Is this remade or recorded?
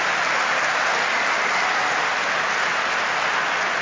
recorded